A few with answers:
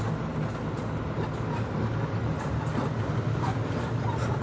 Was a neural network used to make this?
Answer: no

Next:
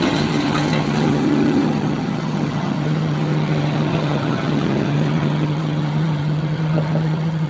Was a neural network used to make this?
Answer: yes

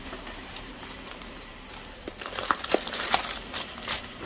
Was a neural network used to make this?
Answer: yes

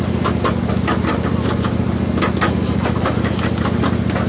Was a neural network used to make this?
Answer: no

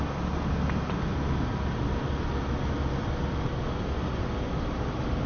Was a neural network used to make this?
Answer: no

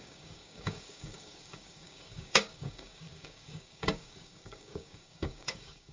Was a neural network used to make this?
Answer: yes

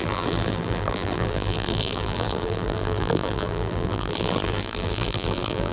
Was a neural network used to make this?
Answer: yes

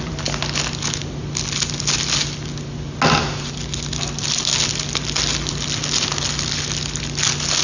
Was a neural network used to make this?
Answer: no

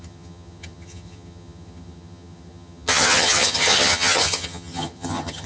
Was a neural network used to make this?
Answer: yes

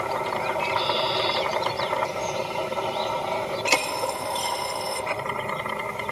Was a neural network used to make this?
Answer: yes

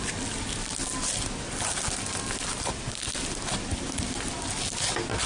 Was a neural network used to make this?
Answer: no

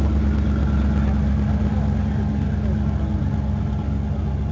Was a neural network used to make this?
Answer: no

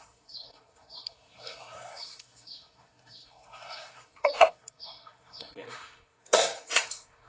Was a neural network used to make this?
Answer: yes